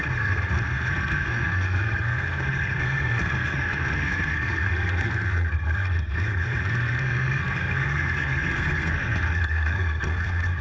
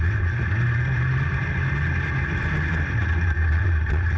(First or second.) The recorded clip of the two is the second